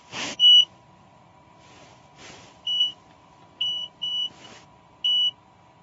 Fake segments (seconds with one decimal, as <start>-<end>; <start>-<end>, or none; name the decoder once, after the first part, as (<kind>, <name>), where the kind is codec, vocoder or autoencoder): none